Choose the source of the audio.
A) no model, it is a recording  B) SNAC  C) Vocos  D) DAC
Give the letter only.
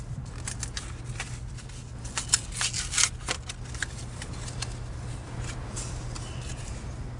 A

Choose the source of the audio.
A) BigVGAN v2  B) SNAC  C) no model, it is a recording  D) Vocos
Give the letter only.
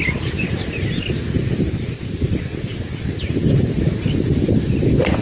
C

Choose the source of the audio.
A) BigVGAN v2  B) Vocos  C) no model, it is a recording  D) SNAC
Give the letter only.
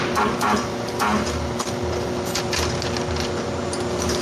C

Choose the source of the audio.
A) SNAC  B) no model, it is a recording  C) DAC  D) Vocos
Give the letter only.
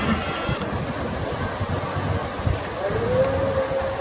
B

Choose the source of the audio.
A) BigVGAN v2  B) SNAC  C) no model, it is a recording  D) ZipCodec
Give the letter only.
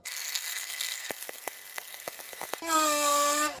B